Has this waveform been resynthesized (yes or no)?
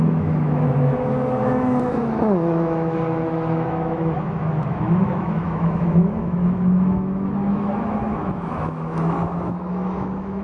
yes